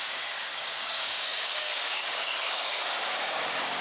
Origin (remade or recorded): remade